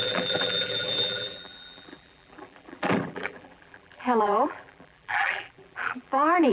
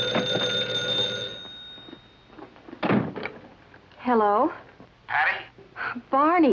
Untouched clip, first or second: second